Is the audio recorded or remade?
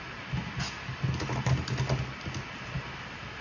recorded